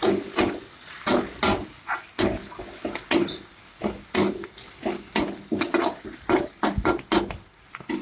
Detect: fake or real real